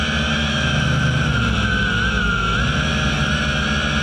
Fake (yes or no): no